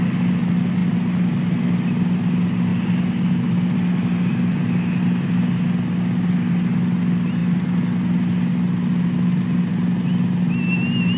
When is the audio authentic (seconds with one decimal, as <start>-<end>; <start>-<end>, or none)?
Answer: 0.0-11.2